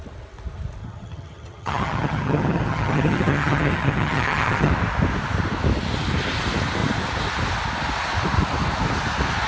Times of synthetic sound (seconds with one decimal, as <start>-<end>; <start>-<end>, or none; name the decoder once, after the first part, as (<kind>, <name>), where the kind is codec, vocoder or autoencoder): 0.8-4.7 (vocoder, HiFi-GAN)

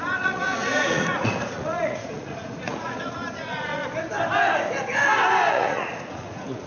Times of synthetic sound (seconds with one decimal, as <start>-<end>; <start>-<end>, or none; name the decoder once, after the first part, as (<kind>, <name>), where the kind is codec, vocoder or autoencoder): 0.0-3.8 (vocoder, Vocos); 5.5-6.7